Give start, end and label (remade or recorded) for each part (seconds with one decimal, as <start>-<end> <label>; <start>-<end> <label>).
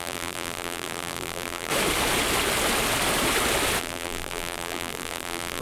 0.0-1.7 remade; 1.7-3.8 recorded; 3.8-5.6 remade